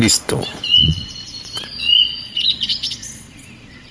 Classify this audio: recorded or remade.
remade